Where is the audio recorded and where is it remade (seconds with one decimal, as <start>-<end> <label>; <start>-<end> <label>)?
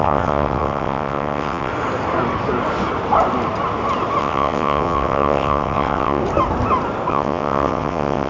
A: 0.0-1.7 remade; 1.7-4.2 recorded; 4.2-6.2 remade; 6.2-7.1 recorded; 7.1-8.3 remade